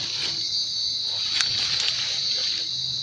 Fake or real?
real